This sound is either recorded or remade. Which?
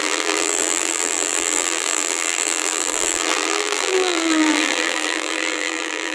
remade